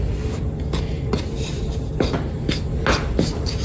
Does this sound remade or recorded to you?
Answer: recorded